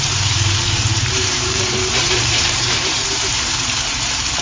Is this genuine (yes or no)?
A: no